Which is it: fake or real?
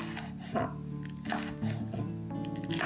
real